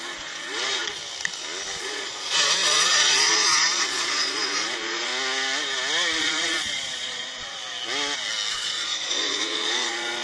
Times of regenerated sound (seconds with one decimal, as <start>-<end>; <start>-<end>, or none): 0.0-1.0; 1.8-5.1; 6.2-7.6; 8.5-10.2

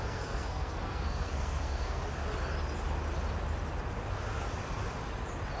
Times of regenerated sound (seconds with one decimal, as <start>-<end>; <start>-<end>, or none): 0.0-2.0

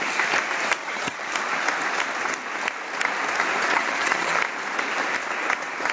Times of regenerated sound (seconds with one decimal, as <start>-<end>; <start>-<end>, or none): 0.8-1.3; 3.7-4.4

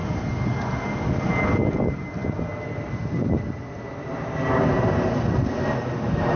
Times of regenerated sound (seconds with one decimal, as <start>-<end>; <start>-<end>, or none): none

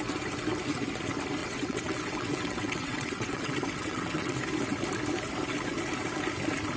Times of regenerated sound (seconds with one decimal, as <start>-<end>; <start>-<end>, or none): 1.4-4.4

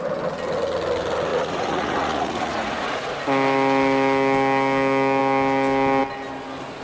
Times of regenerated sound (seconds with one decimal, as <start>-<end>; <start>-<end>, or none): 1.3-3.2